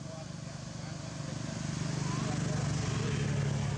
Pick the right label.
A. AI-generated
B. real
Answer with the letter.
B